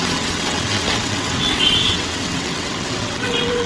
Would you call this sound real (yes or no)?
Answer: no